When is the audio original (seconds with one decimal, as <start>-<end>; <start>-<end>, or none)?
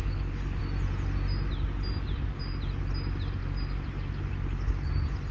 0.6-5.3